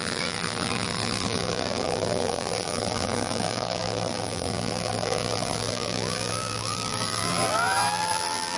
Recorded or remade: remade